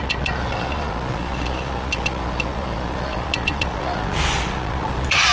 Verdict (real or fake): fake